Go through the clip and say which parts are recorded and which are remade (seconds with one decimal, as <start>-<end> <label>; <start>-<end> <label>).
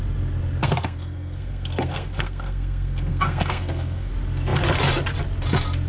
0.0-0.6 recorded; 0.6-4.1 remade; 4.1-5.9 recorded